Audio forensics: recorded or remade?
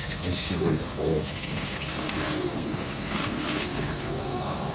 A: remade